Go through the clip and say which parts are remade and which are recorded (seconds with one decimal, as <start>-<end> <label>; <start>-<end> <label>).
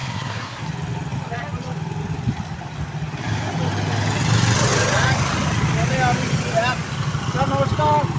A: 0.0-0.6 remade; 0.6-8.2 recorded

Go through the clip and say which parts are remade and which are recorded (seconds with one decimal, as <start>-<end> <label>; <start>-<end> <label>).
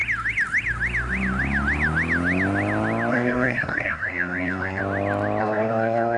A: 0.0-3.1 recorded; 3.1-4.8 remade; 4.8-5.4 recorded; 5.4-6.2 remade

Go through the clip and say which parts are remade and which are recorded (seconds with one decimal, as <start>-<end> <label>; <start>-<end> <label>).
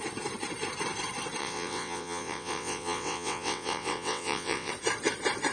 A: 0.0-1.4 recorded; 1.4-4.7 remade; 4.7-5.5 recorded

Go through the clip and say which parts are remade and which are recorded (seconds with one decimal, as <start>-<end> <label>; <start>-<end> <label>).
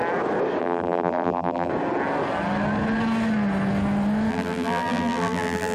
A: 0.0-0.6 recorded; 0.6-1.7 remade; 1.7-4.3 recorded; 4.3-5.7 remade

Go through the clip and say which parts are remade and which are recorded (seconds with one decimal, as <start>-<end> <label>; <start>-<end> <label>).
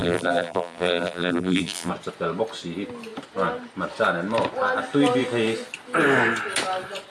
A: 0.0-1.9 remade; 1.9-7.1 recorded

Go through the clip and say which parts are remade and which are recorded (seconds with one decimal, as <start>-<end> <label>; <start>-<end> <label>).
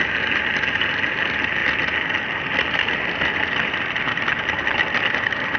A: 0.0-5.6 recorded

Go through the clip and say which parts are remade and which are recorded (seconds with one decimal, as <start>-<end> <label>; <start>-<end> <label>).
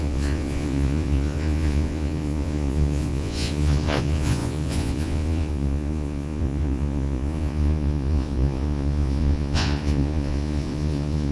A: 0.0-11.3 remade